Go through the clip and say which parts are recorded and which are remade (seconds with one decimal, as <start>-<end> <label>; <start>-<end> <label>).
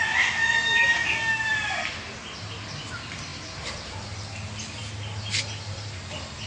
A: 0.0-6.5 recorded